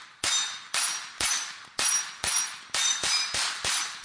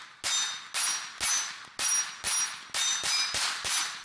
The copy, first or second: first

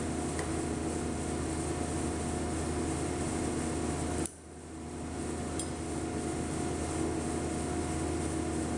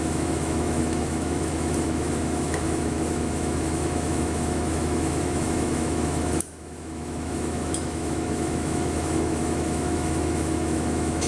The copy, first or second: second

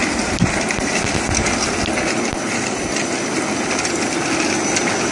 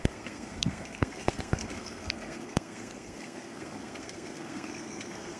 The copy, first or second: second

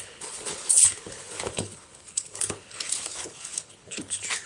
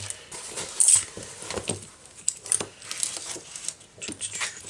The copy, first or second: first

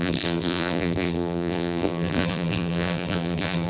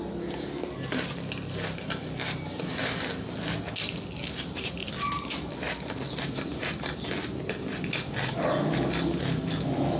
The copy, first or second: first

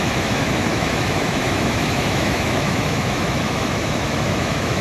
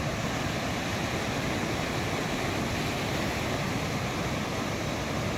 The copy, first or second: first